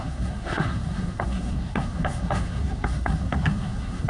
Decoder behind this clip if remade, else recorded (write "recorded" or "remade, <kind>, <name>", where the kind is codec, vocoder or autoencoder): remade, codec, SNAC